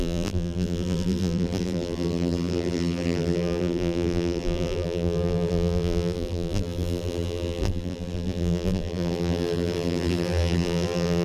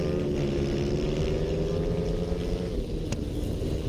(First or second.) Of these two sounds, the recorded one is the second